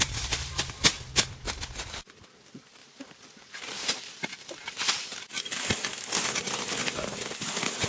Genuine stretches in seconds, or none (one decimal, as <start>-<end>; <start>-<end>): none